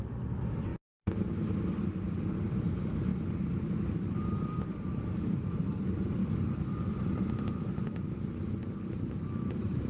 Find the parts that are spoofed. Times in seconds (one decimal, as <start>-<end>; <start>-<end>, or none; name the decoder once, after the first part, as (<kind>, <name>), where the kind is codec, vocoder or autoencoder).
0.0-0.7 (vocoder, BigVGAN v2); 2.4-3.1; 4.3-6.2; 8.1-9.9